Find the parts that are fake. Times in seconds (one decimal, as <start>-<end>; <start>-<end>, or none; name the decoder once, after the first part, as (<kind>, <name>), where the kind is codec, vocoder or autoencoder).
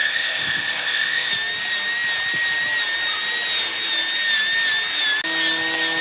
0.0-1.3 (codec, ZipCodec)